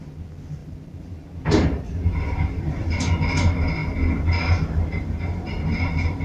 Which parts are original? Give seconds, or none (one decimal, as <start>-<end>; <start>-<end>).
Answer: 0.0-0.6; 3.1-3.8